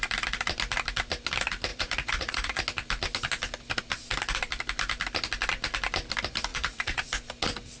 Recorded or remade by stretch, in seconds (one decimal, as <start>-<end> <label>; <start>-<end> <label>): 0.0-1.7 recorded; 1.7-2.6 remade; 2.6-6.5 recorded; 6.5-7.1 remade; 7.1-7.8 recorded